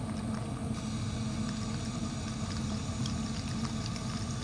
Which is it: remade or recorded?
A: recorded